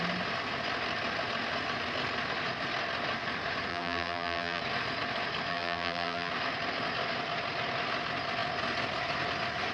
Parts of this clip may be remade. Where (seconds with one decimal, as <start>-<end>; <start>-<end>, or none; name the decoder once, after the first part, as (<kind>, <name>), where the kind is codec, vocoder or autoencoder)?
3.7-4.6 (vocoder, BigVGAN v2); 5.5-6.3